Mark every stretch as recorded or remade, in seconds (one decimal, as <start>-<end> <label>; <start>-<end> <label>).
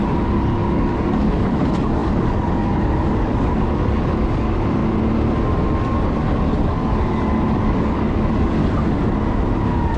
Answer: 0.0-4.8 remade; 4.8-5.5 recorded; 5.5-8.6 remade; 8.6-10.0 recorded